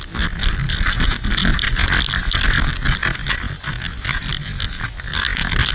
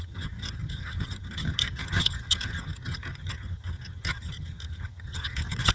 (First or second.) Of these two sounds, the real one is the first